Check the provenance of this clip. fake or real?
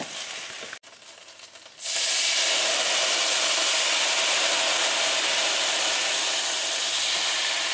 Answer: real